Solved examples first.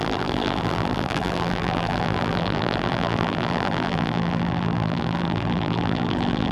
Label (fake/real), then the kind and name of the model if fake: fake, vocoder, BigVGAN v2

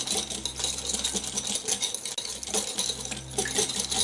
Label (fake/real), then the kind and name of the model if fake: real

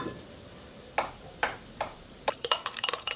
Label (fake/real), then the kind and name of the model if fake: fake, vocoder, BigVGAN v2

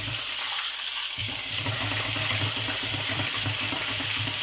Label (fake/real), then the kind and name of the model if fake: fake, vocoder, BigVGAN v2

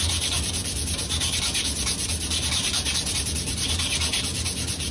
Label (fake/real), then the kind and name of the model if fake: fake, vocoder, BigVGAN v2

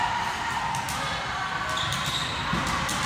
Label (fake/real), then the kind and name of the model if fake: real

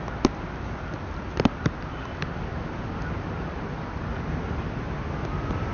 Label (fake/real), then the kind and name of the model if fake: real